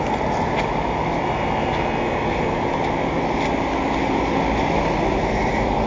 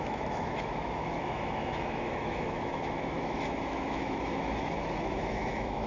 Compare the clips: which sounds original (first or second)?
first